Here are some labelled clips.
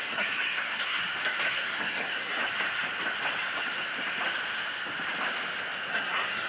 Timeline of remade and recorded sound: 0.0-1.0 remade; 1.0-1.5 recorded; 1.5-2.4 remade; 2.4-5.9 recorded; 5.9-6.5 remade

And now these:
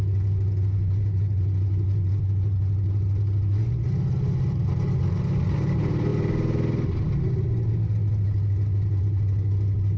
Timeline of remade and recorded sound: 0.0-10.0 recorded